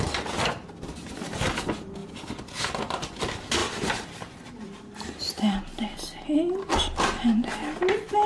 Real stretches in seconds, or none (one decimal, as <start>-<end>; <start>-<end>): 0.0-8.3